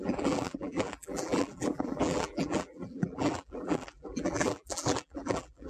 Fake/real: fake